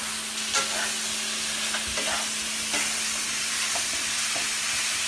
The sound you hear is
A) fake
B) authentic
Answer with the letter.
B